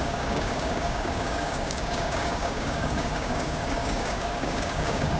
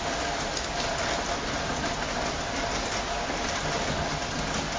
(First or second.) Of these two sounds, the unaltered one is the second